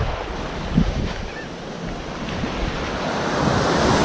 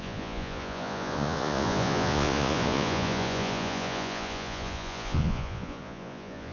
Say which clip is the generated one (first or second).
second